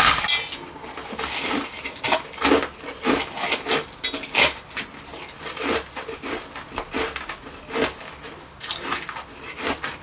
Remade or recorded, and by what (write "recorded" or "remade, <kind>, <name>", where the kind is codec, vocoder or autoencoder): recorded